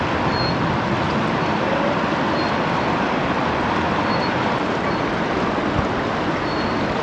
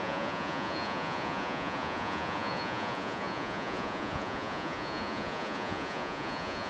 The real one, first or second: first